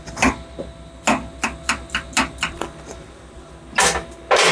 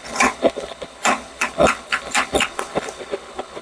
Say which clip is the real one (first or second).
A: first